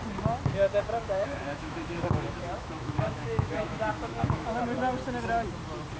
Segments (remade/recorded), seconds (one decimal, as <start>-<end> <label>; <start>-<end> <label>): 0.0-1.0 recorded; 1.0-4.6 remade; 4.6-6.0 recorded